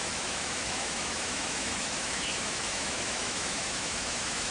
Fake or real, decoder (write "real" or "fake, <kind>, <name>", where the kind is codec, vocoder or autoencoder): fake, autoencoder, DAC-VAE